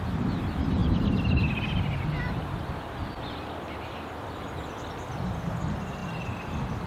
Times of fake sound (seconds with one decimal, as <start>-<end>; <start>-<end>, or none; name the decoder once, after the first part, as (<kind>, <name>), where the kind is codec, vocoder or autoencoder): 0.0-0.8 (vocoder, BigVGAN v2); 3.5-6.0